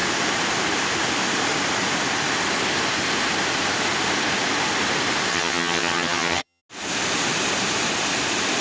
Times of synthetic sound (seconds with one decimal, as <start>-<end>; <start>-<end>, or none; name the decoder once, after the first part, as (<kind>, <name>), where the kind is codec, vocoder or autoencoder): 5.3-6.6 (vocoder, HiFi-GAN)